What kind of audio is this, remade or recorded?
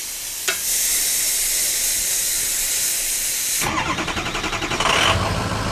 recorded